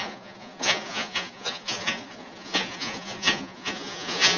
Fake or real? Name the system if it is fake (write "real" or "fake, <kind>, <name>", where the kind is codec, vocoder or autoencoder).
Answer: fake, vocoder, Vocos